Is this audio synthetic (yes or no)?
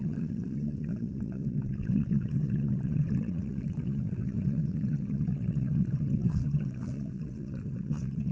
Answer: yes